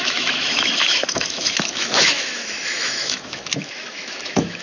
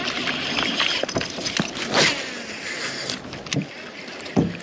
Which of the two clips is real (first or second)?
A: second